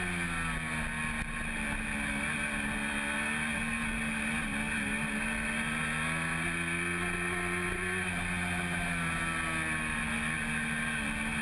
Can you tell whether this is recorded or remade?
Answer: recorded